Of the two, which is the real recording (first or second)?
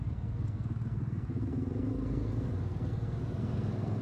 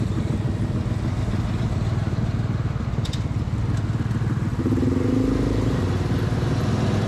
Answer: second